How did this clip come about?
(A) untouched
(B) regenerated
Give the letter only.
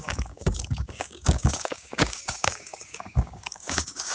B